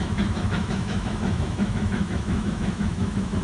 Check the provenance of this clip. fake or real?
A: fake